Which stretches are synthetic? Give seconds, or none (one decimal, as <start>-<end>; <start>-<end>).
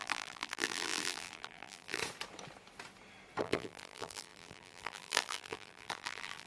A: 0.0-2.0; 3.4-6.5